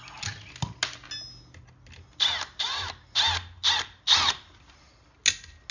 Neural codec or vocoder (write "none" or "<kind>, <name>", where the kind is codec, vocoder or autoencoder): none